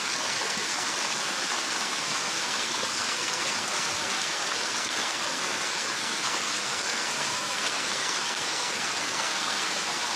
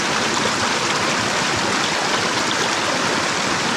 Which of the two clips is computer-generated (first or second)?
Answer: first